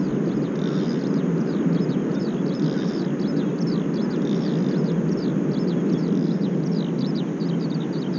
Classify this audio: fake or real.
real